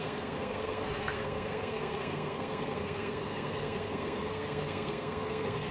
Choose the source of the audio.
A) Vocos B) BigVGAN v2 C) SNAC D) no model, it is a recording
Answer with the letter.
C